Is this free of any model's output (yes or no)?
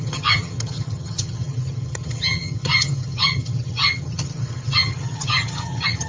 no